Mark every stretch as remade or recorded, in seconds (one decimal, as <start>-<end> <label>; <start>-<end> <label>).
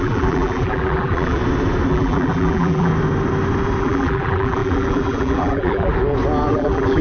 0.0-1.4 remade; 1.4-1.9 recorded; 1.9-2.9 remade; 2.9-3.8 recorded; 3.8-5.9 remade; 5.9-6.5 recorded; 6.5-7.0 remade